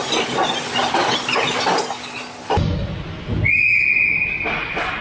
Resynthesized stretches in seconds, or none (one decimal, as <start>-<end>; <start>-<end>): none